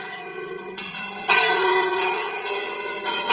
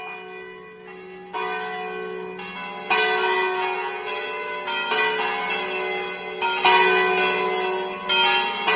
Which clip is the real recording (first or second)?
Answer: second